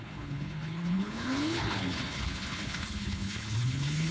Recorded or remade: remade